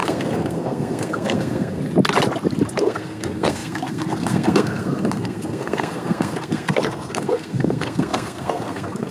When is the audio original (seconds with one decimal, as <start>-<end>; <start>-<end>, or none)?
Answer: 1.8-2.8